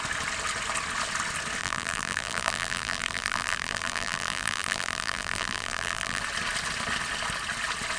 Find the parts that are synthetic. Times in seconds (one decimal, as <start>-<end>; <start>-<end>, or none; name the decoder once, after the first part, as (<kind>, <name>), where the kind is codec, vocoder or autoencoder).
1.6-6.2 (vocoder, BigVGAN v2)